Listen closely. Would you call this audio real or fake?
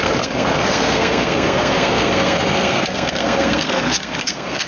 fake